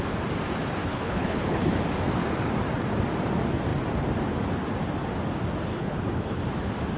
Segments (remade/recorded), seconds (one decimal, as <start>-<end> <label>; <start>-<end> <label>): 0.0-0.8 recorded; 0.8-1.8 remade; 1.8-5.7 recorded; 5.7-6.4 remade; 6.4-7.0 recorded